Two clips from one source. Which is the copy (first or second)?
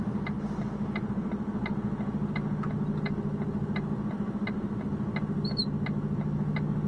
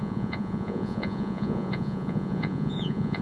second